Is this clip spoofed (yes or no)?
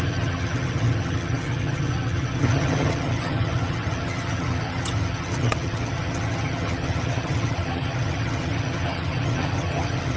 yes